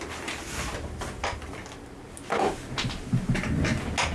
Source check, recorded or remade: recorded